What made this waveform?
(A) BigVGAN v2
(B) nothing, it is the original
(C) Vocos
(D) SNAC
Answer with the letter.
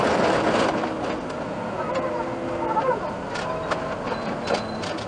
B